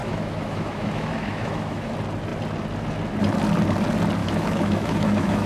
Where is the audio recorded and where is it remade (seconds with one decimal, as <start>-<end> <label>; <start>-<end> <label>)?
0.0-1.9 remade; 1.9-4.2 recorded; 4.2-5.5 remade